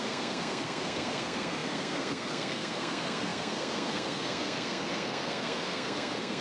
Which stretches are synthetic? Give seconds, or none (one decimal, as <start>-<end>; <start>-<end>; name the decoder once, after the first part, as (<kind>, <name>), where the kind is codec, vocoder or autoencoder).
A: 0.0-6.4 (codec, SNAC)